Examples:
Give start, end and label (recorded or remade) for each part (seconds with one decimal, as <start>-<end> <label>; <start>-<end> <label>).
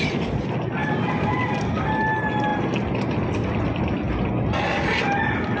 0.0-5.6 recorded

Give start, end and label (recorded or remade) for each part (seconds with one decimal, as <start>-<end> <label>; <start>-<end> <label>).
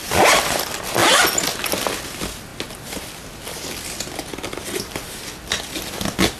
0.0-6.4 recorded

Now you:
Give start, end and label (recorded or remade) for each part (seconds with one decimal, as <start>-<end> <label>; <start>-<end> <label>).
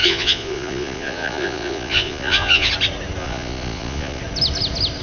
0.0-2.7 remade; 2.7-3.2 recorded; 3.2-4.2 remade; 4.2-5.0 recorded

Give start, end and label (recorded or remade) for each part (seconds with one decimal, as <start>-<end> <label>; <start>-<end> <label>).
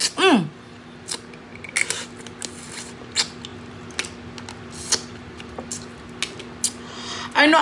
0.0-7.6 recorded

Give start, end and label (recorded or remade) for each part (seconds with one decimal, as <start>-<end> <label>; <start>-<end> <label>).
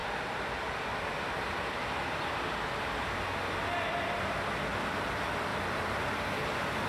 0.0-0.7 remade; 0.7-5.5 recorded; 5.5-6.9 remade